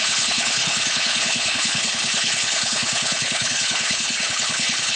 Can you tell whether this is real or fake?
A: fake